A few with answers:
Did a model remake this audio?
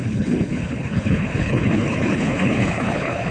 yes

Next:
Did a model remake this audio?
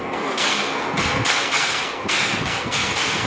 yes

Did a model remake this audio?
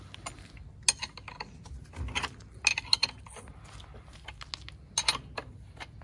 no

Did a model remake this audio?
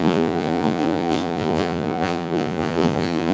yes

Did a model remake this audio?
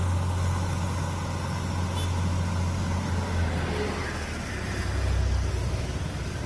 no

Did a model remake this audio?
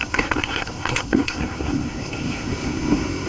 yes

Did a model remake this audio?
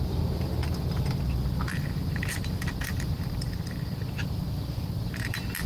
yes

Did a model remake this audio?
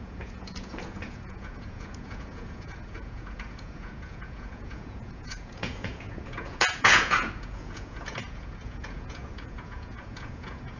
yes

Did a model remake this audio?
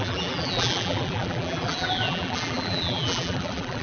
yes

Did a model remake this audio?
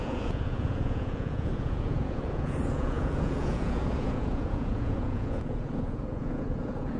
yes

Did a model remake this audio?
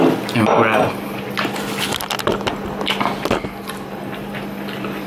no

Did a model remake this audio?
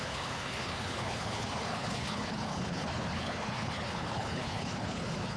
yes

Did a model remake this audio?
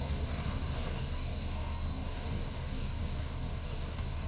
yes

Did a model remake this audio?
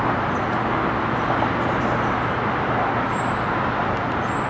no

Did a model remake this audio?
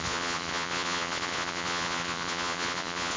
yes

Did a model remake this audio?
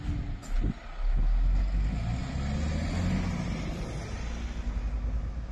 no